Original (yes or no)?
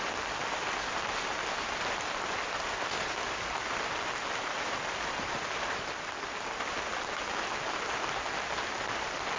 yes